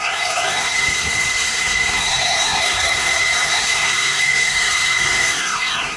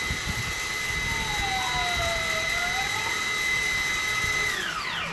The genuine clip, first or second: second